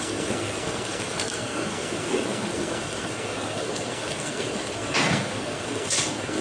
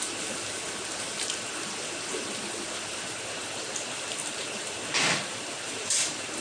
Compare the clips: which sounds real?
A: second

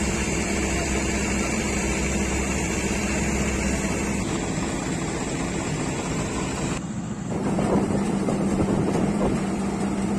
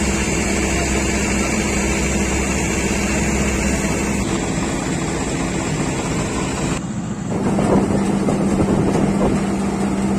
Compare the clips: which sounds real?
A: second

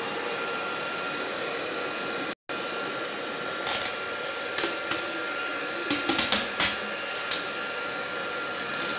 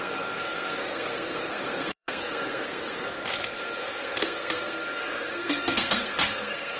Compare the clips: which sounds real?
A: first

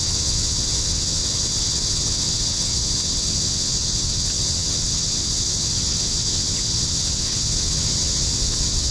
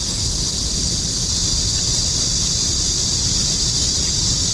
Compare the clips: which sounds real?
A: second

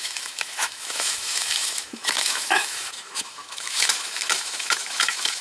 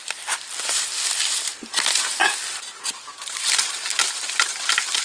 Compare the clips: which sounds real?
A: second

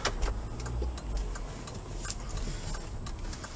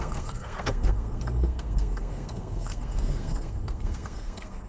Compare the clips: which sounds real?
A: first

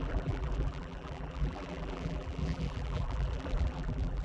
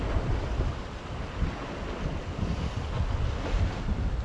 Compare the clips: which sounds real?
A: second